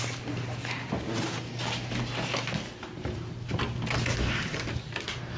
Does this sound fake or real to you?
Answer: real